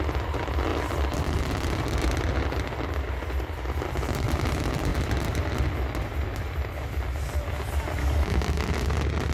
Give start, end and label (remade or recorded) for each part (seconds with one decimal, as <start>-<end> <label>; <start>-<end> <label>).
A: 0.0-8.0 recorded; 8.0-8.6 remade; 8.6-9.3 recorded